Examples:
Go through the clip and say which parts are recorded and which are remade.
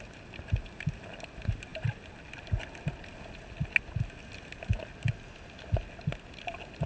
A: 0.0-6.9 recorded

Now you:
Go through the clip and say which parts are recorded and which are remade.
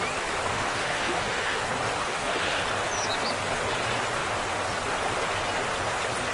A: 0.0-0.5 recorded; 0.5-1.6 remade; 1.6-2.0 recorded; 2.0-2.6 remade; 2.6-6.3 recorded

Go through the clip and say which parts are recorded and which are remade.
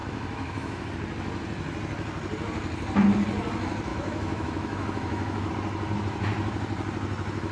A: 0.0-0.9 remade; 0.9-3.9 recorded; 3.9-5.5 remade; 5.5-7.5 recorded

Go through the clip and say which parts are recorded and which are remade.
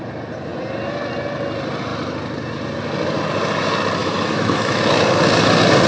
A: 0.0-4.0 recorded; 4.0-4.8 remade; 4.8-5.9 recorded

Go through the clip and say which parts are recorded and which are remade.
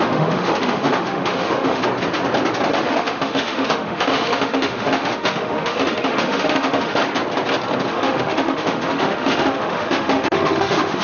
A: 0.0-1.8 remade; 1.8-2.7 recorded; 2.7-7.0 remade; 7.0-7.9 recorded; 7.9-11.0 remade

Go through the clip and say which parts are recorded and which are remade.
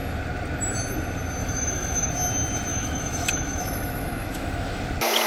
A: 0.0-1.4 recorded; 1.4-2.1 remade; 2.1-2.7 recorded; 2.7-4.8 remade; 4.8-5.3 recorded